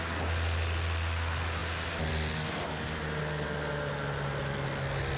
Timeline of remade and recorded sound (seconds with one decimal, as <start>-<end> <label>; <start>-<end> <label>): 0.0-5.2 recorded